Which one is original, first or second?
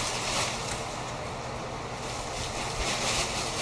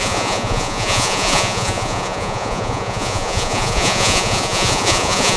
first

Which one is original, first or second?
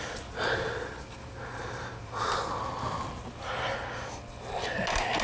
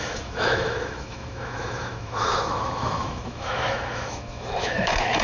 first